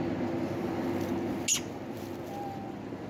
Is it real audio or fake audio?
real